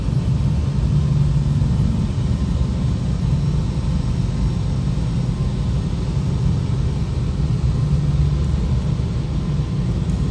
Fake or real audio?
real